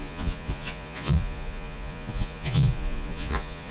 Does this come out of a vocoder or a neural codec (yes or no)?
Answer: yes